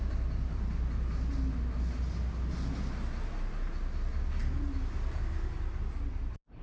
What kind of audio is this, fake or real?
real